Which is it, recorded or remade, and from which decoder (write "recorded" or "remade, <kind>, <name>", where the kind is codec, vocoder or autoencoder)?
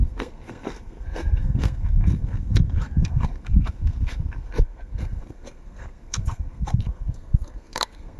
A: remade, codec, SNAC